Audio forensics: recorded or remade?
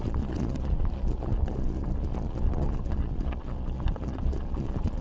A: remade